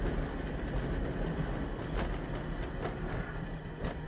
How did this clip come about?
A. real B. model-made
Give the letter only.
A